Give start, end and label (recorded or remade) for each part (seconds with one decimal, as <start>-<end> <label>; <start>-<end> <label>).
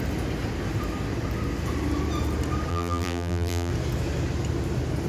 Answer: 0.0-2.7 recorded; 2.7-3.7 remade; 3.7-5.1 recorded